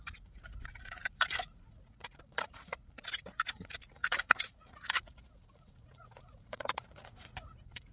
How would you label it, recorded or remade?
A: remade